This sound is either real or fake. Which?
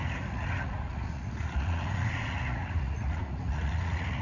fake